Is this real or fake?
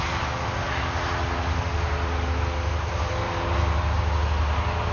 real